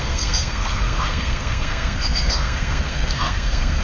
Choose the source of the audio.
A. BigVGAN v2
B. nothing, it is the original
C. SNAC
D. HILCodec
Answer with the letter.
C